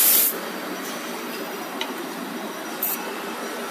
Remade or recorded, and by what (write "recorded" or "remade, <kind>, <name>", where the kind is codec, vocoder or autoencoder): remade, vocoder, BigVGAN v2